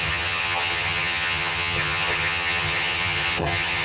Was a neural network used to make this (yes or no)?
yes